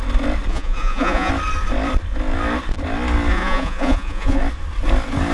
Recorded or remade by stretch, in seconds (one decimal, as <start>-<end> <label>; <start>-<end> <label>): 0.0-0.5 recorded; 0.5-1.3 remade; 1.3-3.3 recorded; 3.3-4.4 remade; 4.4-5.3 recorded